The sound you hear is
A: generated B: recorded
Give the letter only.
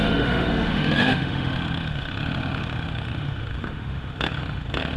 A